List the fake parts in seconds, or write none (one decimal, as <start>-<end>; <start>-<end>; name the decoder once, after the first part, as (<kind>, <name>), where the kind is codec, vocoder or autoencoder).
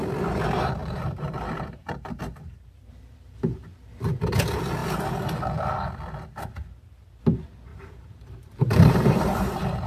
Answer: 0.8-2.2 (vocoder, BigVGAN v2); 7.7-9.9